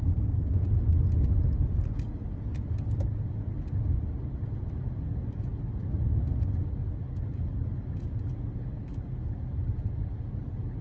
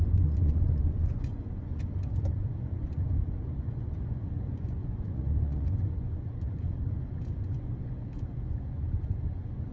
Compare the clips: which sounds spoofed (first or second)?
second